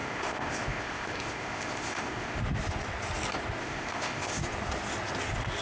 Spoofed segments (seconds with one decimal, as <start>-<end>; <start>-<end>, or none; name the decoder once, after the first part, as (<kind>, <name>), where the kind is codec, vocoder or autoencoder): 0.0-2.4 (codec, ZipCodec); 3.6-4.4